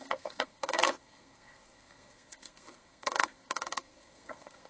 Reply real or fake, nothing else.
fake